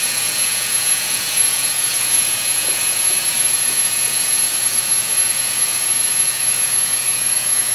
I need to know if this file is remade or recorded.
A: remade